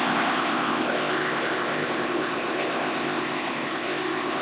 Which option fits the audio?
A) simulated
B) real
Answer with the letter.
A